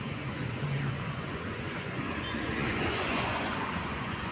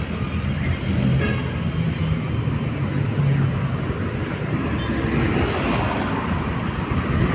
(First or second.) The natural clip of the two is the second